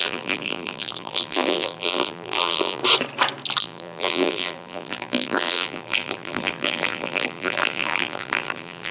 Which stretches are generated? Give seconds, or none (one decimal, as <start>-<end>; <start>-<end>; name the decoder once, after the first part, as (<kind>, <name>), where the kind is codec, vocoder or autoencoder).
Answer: 0.0-2.8 (vocoder, BigVGAN v2); 3.6-8.9